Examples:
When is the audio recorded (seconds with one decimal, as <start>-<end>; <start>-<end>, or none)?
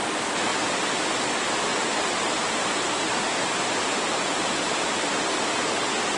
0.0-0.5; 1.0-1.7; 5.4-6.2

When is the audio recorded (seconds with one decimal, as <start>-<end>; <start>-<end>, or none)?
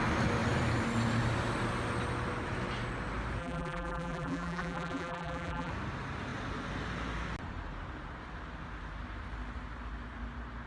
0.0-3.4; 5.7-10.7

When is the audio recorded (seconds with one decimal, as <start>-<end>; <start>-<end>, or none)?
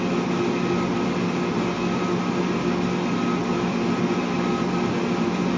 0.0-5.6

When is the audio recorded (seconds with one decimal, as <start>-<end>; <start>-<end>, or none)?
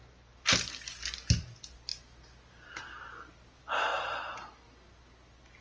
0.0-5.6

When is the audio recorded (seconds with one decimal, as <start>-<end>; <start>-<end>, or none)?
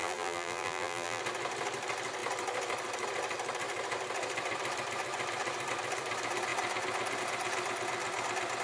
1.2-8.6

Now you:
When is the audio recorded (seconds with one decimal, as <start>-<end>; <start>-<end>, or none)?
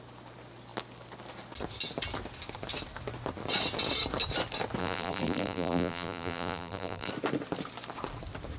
0.0-4.8; 7.1-8.6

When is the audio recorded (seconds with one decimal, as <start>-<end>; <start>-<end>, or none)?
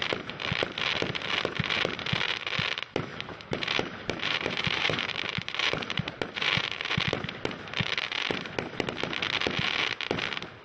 0.0-3.1; 6.9-10.6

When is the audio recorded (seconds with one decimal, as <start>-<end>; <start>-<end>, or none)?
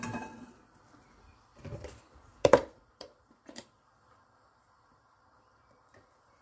0.0-2.3